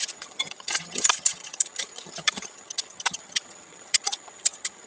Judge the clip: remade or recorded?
remade